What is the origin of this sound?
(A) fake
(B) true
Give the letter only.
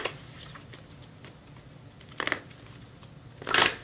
B